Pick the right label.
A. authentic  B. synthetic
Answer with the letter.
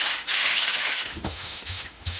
B